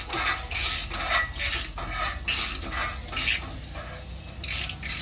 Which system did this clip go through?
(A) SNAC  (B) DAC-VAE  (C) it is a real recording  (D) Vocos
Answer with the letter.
C